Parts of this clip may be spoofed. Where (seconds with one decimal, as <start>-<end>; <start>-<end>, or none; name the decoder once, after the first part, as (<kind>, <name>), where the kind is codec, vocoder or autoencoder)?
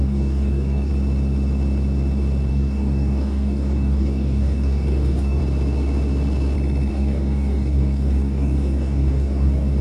0.0-0.9 (codec, DAC); 2.5-5.4; 6.9-9.8